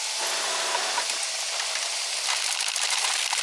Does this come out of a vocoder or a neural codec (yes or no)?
no